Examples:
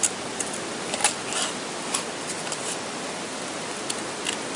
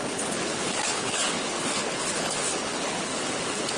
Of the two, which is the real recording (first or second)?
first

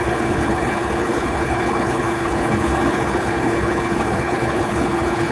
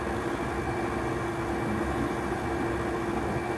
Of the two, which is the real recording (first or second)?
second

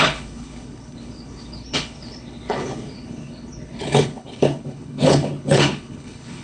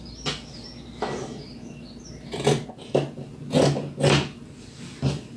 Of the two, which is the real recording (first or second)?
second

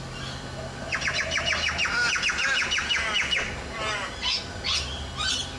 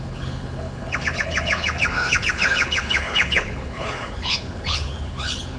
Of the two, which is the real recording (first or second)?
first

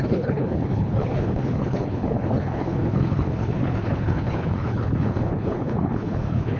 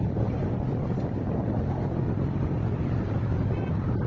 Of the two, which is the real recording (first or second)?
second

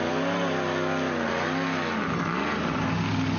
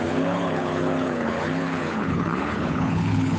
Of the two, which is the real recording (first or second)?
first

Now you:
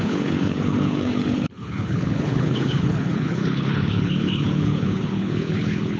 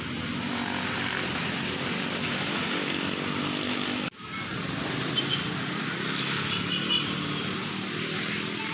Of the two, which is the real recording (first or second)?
second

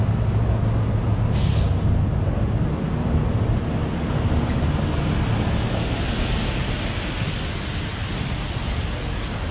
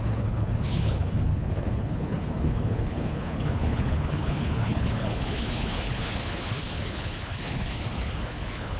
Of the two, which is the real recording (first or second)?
first